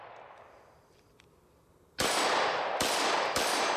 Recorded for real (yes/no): no